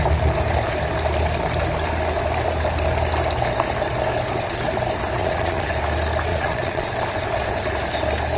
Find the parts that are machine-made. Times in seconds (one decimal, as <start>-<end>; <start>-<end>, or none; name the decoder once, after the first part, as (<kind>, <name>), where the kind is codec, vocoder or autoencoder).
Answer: 5.2-5.7 (vocoder, Vocos); 6.3-6.9